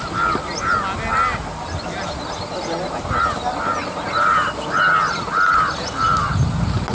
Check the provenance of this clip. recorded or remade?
recorded